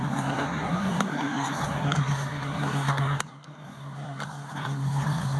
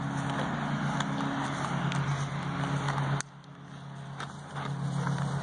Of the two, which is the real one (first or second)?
second